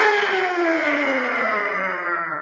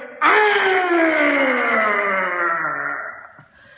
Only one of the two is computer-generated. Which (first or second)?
first